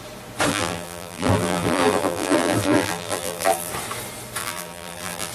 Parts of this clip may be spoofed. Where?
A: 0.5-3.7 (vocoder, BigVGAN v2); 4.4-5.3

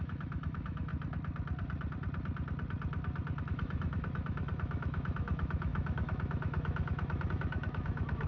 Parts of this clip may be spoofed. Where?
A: 0.0-0.9 (autoencoder, DAC-VAE); 3.4-8.3